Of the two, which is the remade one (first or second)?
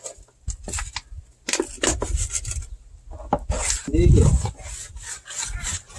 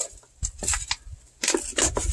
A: second